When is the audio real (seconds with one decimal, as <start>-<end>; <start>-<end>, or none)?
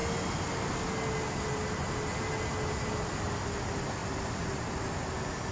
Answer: 0.0-4.0; 4.7-5.5